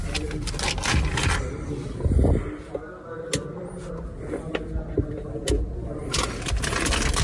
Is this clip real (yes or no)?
yes